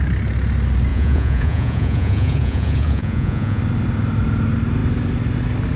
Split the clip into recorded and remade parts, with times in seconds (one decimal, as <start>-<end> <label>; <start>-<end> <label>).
0.0-0.9 recorded; 0.9-3.6 remade; 3.6-5.8 recorded